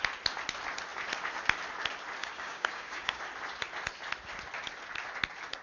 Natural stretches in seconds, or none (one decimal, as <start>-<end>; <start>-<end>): 0.0-2.2; 3.2-5.6